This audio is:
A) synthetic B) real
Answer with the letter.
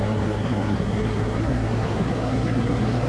A